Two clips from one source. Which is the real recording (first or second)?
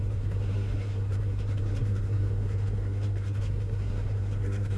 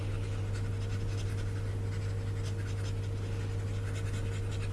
second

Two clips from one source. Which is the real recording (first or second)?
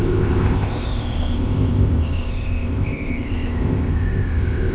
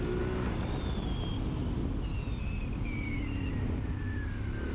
second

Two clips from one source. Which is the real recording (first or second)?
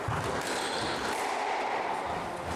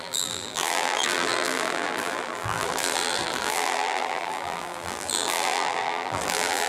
first